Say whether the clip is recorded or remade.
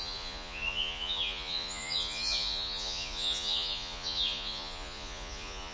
remade